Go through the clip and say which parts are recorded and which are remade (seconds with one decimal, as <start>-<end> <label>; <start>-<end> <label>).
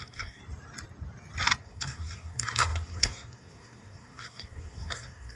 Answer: 0.0-0.4 remade; 0.4-1.6 recorded; 1.6-5.4 remade